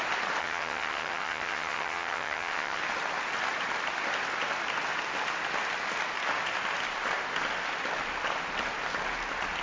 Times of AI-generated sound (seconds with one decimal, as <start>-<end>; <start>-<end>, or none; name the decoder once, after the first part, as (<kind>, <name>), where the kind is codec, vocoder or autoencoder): 0.4-2.8 (vocoder, HiFi-GAN)